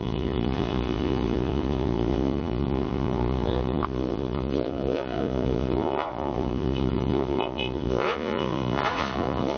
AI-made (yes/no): yes